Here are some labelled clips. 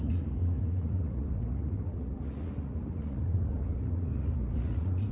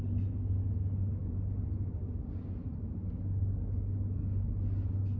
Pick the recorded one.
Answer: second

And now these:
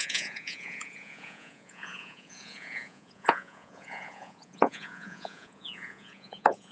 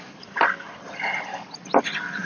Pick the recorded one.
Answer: second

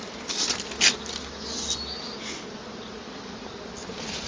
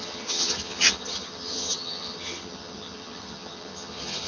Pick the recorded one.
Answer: first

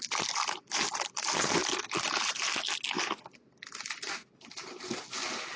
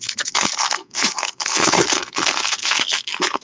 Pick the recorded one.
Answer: first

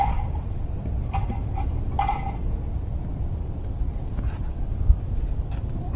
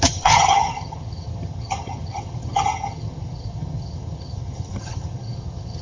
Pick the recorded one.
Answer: first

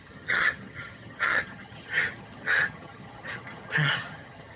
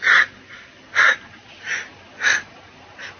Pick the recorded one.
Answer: second